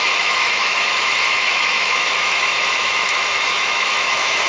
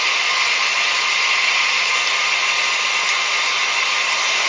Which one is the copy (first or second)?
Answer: first